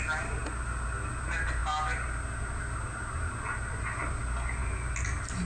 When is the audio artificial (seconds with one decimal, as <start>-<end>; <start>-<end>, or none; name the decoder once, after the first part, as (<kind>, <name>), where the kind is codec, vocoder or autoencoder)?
none